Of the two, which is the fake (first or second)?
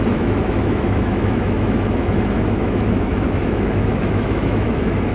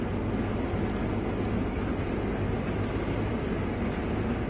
first